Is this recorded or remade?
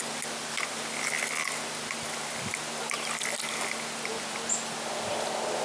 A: recorded